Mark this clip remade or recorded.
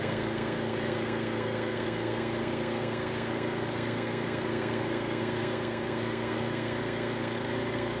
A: remade